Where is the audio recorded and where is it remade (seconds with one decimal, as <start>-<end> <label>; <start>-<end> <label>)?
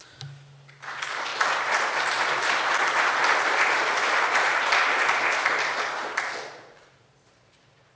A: 0.0-1.3 recorded; 1.3-5.8 remade; 5.8-8.0 recorded